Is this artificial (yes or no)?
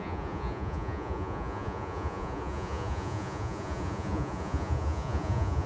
yes